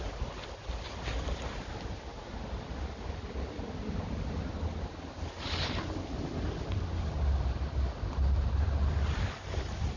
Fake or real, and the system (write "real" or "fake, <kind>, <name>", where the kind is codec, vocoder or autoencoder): real